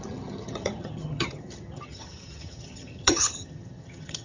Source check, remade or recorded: remade